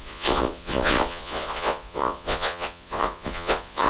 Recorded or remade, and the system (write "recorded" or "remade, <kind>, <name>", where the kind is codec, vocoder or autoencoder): remade, vocoder, Vocos